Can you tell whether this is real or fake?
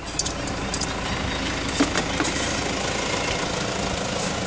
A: real